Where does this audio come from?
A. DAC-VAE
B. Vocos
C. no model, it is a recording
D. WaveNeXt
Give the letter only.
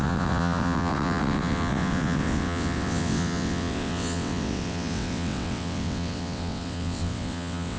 D